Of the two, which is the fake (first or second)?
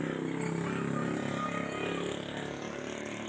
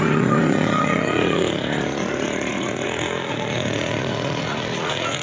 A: second